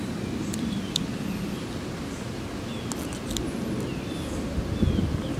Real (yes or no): yes